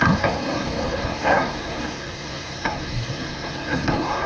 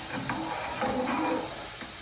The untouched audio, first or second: second